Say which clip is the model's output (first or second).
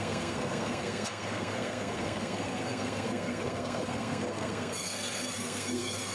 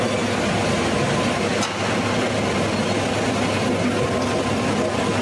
first